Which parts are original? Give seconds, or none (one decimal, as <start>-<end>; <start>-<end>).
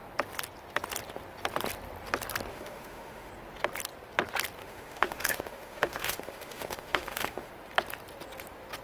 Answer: 0.0-2.5; 3.3-4.6; 7.5-8.8